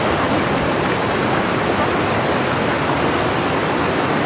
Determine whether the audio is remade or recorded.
recorded